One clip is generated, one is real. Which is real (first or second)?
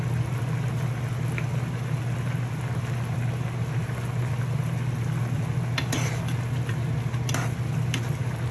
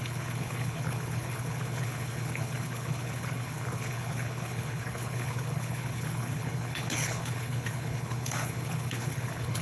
first